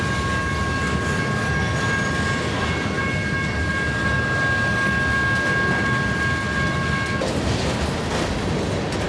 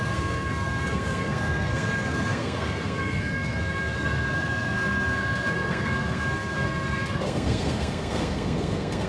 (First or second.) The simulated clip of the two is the second